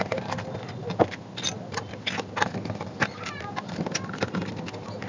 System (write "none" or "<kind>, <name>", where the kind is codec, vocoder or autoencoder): none